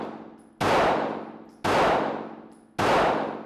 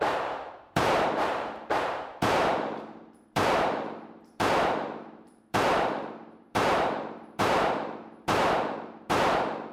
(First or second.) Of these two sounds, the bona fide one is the first